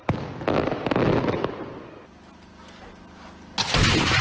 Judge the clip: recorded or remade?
recorded